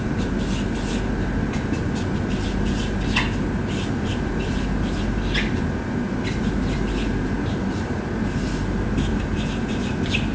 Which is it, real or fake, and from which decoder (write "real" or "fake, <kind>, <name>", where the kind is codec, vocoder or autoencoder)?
real